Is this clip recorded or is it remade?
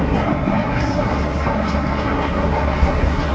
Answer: remade